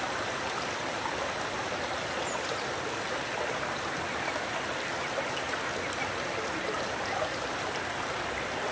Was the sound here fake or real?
real